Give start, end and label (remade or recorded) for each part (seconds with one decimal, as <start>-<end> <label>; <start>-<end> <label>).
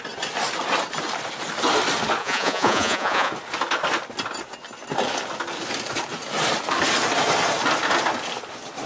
0.0-2.2 recorded; 2.2-3.3 remade; 3.3-8.9 recorded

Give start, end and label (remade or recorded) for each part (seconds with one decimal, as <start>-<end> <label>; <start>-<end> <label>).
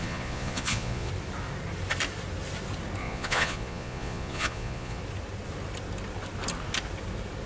0.0-1.1 remade; 1.1-3.0 recorded; 3.0-5.0 remade; 5.0-7.5 recorded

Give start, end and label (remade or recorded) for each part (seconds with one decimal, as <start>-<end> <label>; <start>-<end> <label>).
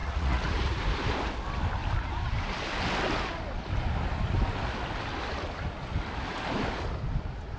0.0-0.8 remade; 0.8-7.6 recorded